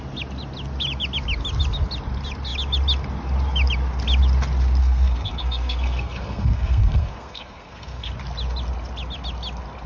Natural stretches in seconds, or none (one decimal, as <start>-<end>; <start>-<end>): 0.0-4.8; 8.1-9.9